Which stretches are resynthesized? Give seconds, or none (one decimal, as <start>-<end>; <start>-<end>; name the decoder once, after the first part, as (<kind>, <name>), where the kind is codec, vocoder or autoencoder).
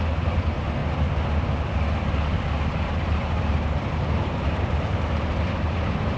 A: 0.0-0.8 (vocoder, BigVGAN v2); 2.7-6.2